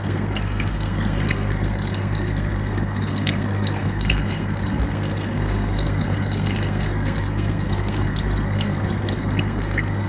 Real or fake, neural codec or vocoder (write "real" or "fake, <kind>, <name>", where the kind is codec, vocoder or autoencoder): fake, codec, SNAC